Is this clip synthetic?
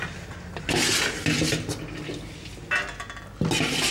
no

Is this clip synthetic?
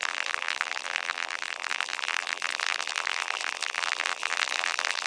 yes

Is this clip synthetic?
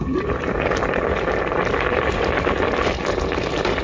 no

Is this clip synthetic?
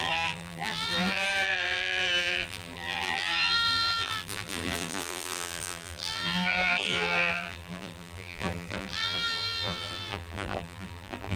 yes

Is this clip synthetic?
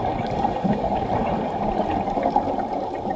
yes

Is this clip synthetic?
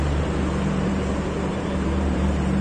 yes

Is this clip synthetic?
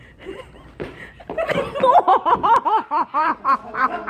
yes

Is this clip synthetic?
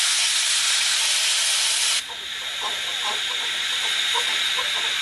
no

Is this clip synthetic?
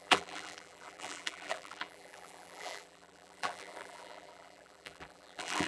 yes